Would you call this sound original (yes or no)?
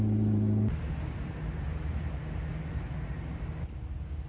yes